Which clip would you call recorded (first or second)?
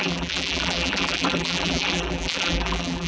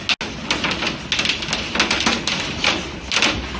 second